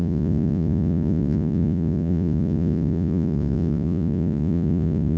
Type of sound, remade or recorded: remade